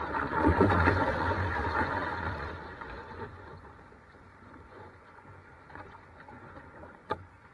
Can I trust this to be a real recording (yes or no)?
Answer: no